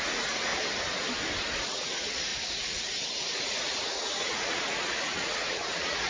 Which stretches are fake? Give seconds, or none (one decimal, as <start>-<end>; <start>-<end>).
0.0-0.5; 1.6-6.1